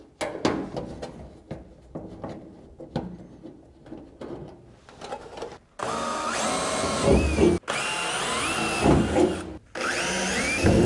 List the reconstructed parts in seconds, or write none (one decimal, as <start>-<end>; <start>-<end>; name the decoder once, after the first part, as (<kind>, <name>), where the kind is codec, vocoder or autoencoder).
none